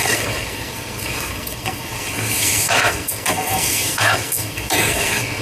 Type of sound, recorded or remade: remade